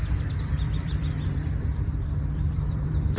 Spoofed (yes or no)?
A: yes